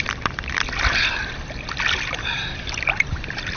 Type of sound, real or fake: real